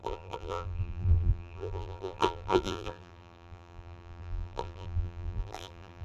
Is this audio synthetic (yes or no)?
yes